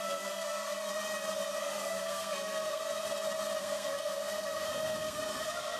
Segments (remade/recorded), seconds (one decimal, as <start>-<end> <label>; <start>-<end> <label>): 0.0-0.9 remade; 0.9-1.6 recorded; 1.6-2.8 remade; 2.8-3.6 recorded; 3.6-5.8 remade